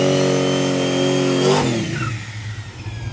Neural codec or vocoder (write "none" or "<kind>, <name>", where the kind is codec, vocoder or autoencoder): none